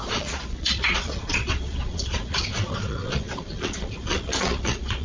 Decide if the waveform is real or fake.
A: fake